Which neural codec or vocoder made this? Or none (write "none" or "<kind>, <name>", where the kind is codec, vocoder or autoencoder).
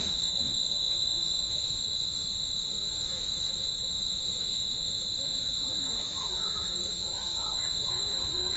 autoencoder, DAC-VAE